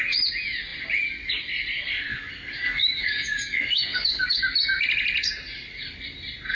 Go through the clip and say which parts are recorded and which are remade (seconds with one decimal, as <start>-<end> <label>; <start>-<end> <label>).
0.0-2.1 recorded; 2.1-4.4 remade; 4.4-6.5 recorded